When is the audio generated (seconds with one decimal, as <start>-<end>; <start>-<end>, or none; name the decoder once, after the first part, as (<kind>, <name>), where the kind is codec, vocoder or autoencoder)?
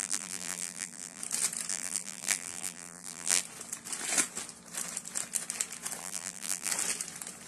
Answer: 0.0-1.2 (vocoder, BigVGAN v2); 1.7-3.4; 6.0-6.7